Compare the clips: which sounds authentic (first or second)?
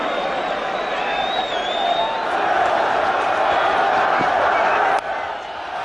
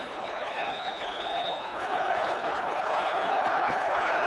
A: first